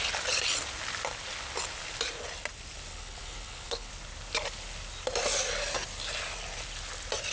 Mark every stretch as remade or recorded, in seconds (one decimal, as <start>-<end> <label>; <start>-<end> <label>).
0.0-2.9 recorded; 2.9-3.9 remade; 3.9-7.3 recorded